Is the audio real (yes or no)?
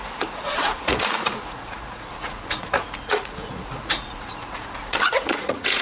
no